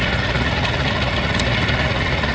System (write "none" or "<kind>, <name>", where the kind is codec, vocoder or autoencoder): vocoder, Vocos